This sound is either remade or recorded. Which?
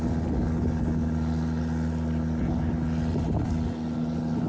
recorded